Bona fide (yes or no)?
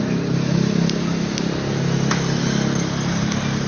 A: yes